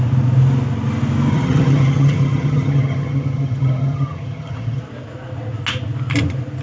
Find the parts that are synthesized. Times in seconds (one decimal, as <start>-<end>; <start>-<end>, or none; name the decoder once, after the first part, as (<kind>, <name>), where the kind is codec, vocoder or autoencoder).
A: 1.3-4.8 (vocoder, HiFi-GAN)